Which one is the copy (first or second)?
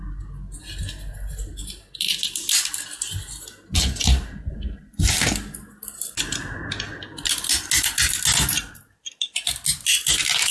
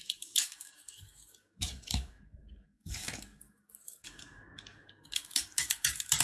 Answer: second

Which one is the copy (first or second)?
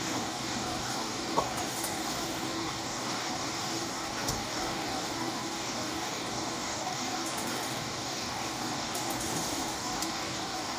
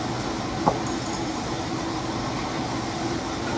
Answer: first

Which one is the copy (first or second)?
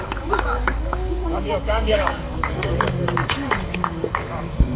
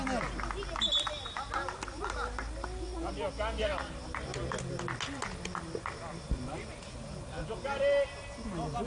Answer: first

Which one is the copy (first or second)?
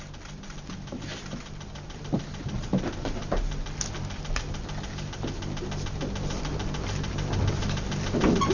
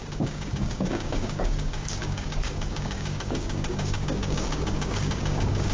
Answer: second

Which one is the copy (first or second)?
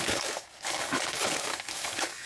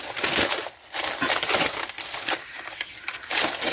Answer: first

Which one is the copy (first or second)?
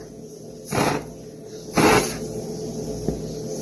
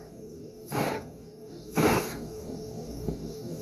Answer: second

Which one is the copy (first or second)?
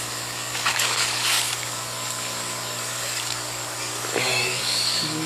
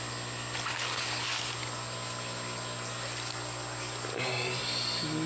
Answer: first